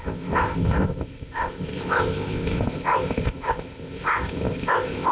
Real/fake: fake